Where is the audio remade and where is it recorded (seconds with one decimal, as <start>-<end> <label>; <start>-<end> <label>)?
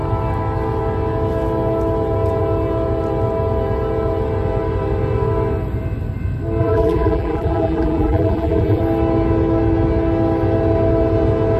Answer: 0.0-6.6 recorded; 6.6-8.8 remade; 8.8-11.6 recorded